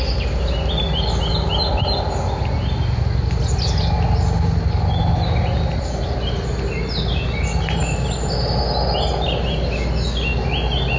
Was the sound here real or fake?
real